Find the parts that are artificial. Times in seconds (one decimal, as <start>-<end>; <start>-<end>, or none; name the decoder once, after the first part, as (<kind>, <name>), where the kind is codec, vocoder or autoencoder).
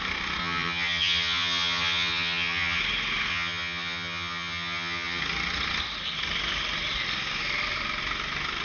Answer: 0.4-2.8 (vocoder, HiFi-GAN); 3.3-5.2